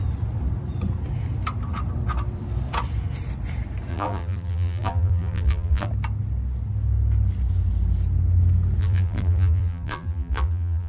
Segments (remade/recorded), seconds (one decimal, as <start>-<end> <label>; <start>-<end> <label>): 0.0-3.9 recorded; 3.9-5.9 remade; 5.9-8.8 recorded; 8.8-10.9 remade